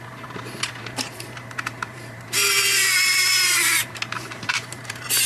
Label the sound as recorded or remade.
recorded